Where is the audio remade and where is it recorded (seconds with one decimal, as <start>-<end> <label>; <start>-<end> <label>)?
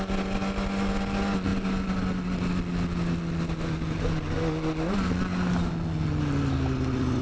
0.0-7.2 recorded